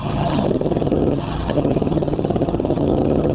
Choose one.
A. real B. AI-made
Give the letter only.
B